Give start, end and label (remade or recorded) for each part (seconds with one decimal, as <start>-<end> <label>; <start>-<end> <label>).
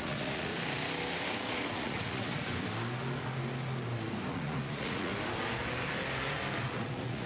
0.0-0.5 remade; 0.5-1.5 recorded; 1.5-2.5 remade; 2.5-4.3 recorded; 4.3-5.1 remade; 5.1-6.6 recorded; 6.6-7.3 remade